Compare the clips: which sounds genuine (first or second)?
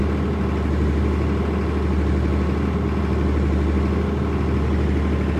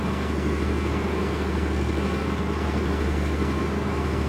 first